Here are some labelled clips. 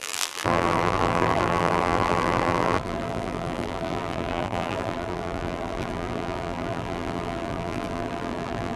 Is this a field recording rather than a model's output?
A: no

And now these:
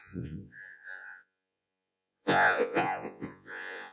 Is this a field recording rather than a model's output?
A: no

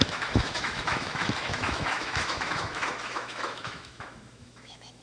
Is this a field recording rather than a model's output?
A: no